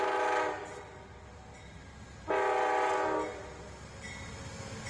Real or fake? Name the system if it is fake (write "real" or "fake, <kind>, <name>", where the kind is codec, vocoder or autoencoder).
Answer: real